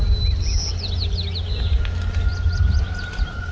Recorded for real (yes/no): yes